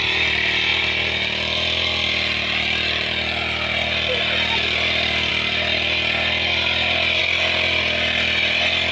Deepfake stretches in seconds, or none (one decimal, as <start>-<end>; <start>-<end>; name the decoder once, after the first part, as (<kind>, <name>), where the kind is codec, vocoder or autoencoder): none